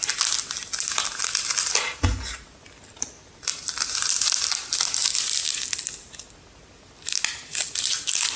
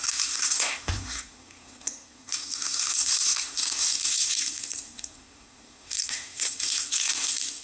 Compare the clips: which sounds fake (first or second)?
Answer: second